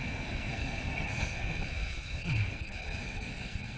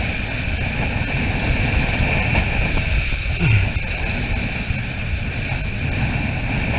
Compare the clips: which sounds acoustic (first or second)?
second